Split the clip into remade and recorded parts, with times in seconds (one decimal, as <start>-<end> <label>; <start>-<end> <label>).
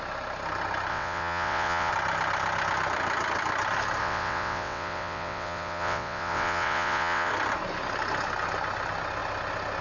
0.0-0.9 recorded; 0.9-1.9 remade; 1.9-4.0 recorded; 4.0-7.3 remade; 7.3-9.8 recorded